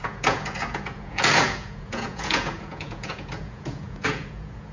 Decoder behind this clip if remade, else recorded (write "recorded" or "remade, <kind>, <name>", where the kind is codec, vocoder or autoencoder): remade, vocoder, Vocos